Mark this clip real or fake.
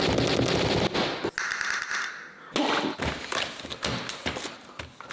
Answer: real